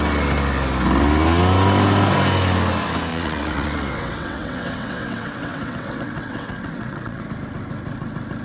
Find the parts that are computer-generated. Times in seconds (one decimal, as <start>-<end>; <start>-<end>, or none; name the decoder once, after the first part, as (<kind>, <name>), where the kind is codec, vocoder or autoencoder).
3.1-7.2 (vocoder, WaveNeXt)